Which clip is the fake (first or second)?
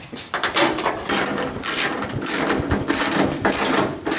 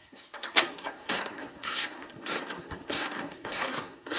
second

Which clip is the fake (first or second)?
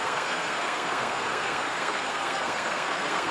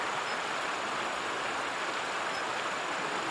first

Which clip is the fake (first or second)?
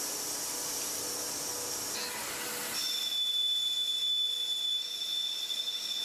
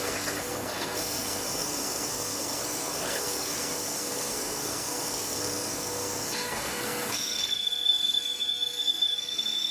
second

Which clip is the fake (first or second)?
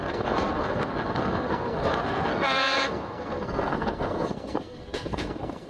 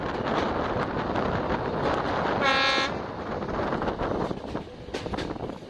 first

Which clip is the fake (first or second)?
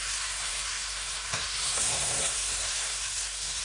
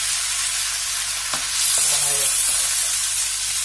first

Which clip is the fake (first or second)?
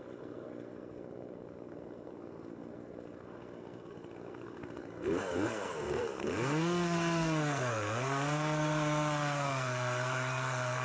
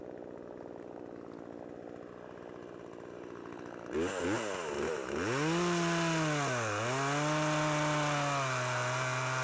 first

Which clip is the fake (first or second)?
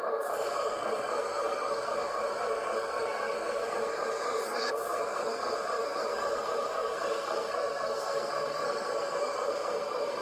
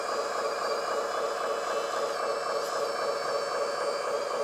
first